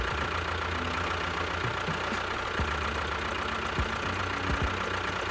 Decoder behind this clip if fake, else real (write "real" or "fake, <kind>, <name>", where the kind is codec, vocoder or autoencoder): real